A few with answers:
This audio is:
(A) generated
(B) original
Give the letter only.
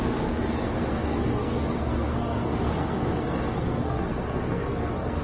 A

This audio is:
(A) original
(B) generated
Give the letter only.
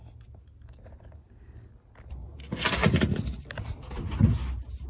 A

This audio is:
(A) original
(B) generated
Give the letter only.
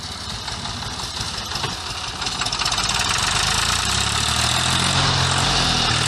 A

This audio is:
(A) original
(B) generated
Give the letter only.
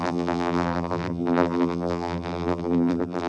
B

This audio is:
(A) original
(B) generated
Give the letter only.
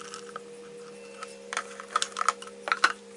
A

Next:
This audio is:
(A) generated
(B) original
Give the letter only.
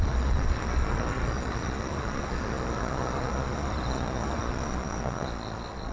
A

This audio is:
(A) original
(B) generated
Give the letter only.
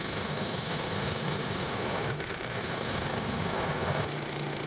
B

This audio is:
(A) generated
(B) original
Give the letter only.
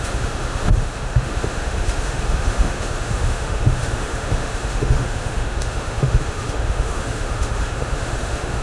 A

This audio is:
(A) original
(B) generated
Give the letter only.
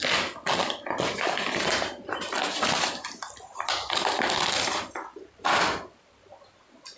A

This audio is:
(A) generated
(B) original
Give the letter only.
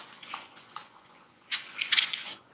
A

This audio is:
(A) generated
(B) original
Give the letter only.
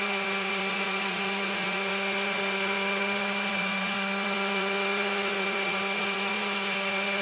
A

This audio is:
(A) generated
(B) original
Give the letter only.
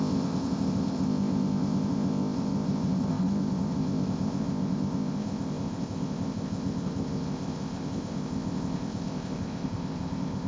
A